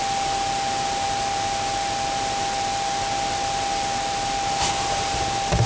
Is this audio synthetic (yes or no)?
no